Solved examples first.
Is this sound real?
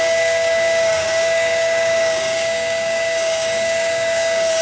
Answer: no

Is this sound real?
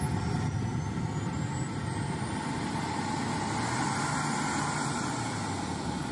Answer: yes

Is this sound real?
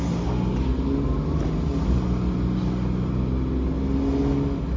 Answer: yes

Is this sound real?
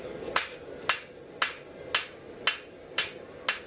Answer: yes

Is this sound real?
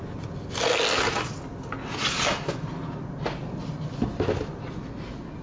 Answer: yes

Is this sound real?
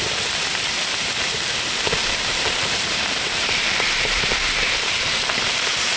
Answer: no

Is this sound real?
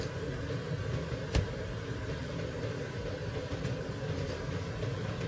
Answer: yes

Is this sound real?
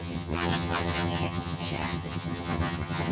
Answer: no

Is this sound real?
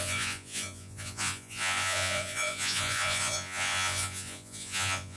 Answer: no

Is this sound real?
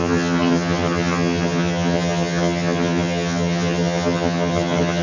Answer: no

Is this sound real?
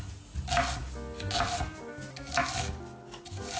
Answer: yes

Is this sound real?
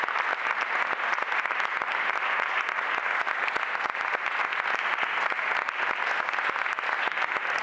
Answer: yes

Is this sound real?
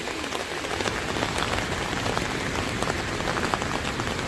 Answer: yes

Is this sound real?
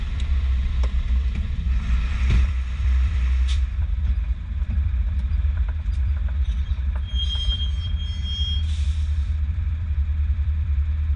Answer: no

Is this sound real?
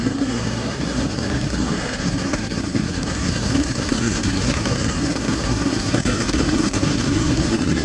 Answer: no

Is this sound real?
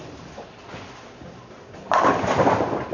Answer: yes